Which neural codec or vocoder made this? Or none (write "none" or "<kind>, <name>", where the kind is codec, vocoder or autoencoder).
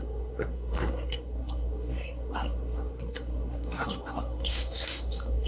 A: codec, SNAC